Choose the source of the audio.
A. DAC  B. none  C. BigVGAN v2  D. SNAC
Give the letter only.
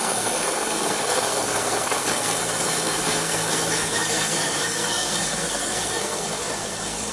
D